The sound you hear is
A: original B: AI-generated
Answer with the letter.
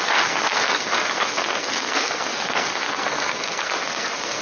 B